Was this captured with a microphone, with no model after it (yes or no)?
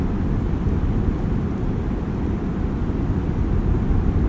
yes